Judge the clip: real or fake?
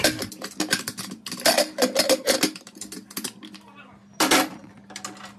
real